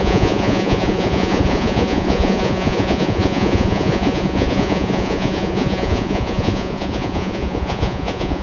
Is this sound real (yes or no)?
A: no